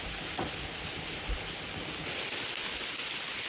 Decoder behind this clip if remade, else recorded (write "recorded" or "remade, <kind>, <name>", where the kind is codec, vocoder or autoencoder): recorded